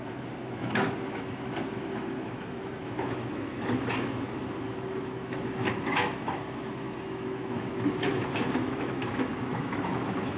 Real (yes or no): no